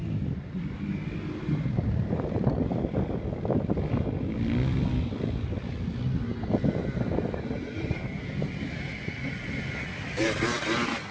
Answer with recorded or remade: recorded